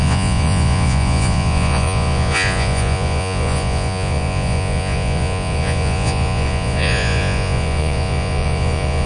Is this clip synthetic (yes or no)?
yes